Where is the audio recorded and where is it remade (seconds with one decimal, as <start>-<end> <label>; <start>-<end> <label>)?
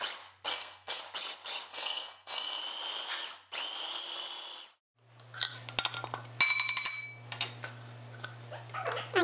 0.0-0.5 recorded; 0.5-1.0 remade; 1.0-1.7 recorded; 1.7-2.6 remade; 2.6-9.2 recorded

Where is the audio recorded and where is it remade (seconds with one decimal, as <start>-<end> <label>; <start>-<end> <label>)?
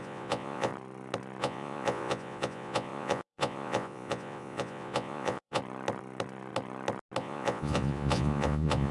0.0-0.7 remade; 0.7-1.4 recorded; 1.4-5.6 remade; 5.6-7.2 recorded; 7.2-8.9 remade